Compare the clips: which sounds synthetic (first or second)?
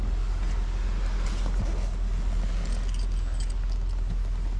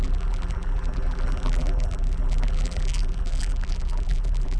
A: second